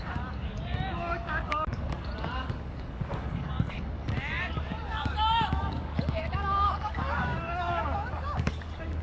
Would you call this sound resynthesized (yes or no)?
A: yes